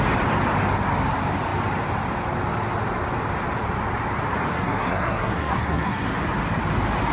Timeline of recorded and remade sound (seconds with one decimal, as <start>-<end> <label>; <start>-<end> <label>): 0.0-4.5 recorded; 4.5-6.1 remade; 6.1-7.1 recorded